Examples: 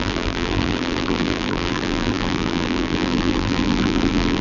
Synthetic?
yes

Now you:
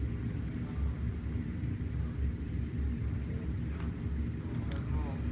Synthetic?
no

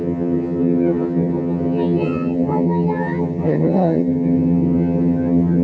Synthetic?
yes